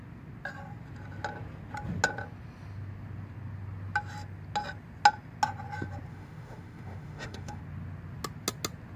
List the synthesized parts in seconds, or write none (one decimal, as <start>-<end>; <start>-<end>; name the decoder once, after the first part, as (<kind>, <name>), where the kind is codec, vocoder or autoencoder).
6.1-7.6 (autoencoder, DAC-VAE)